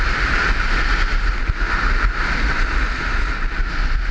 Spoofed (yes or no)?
no